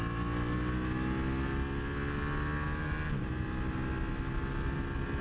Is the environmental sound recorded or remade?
recorded